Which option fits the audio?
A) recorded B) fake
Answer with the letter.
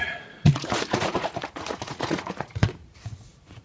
B